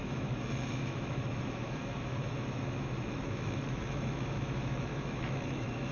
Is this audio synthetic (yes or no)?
yes